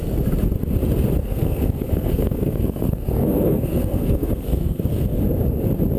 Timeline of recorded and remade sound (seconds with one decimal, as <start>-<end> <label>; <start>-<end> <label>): 0.0-1.2 recorded; 1.2-4.8 remade; 4.8-6.0 recorded